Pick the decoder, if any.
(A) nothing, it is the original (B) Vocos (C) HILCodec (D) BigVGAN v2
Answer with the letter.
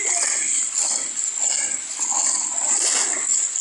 A